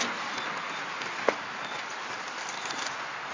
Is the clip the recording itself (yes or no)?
yes